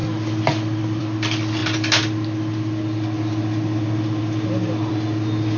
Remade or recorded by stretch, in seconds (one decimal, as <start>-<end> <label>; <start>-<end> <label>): 0.0-5.6 recorded